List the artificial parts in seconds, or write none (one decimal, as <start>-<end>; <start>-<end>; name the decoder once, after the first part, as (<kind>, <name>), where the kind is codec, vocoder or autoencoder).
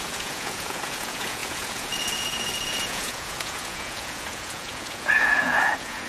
0.0-6.1 (vocoder, Vocos)